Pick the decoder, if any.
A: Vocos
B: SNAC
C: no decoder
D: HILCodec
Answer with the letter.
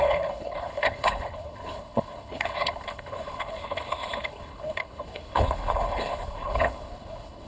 D